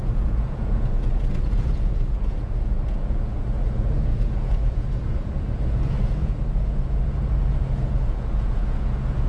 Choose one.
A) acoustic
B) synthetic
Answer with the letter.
B